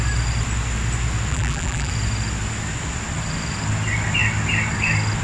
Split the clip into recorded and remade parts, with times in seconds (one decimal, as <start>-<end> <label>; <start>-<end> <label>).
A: 0.0-1.3 recorded; 1.3-1.9 remade; 1.9-5.2 recorded